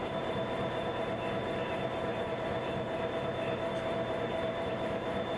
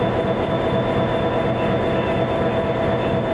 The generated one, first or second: first